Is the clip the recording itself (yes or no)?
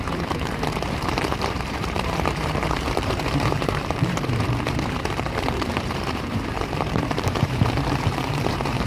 no